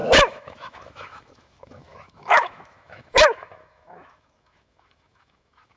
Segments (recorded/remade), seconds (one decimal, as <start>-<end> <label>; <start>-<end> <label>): 0.0-5.8 remade